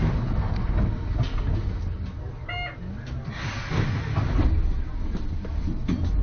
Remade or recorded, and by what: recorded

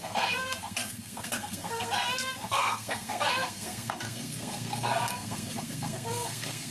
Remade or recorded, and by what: remade, codec, SNAC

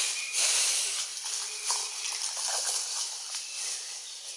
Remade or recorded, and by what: recorded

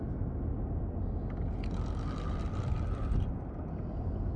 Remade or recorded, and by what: recorded